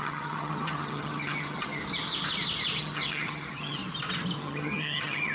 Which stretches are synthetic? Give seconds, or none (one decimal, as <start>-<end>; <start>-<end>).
0.0-1.8; 2.8-3.8; 4.4-5.3